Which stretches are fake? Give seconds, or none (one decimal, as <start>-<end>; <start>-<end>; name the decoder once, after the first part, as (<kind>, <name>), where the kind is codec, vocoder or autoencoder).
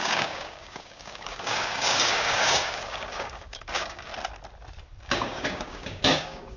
0.0-4.1 (codec, DAC); 5.0-6.6